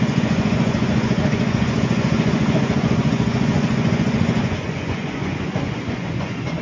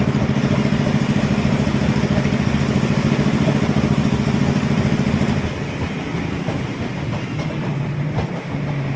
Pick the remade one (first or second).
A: first